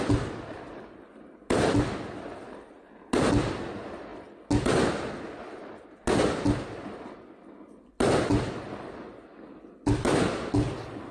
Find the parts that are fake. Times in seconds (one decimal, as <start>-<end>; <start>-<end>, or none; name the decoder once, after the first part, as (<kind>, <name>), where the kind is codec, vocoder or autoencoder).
none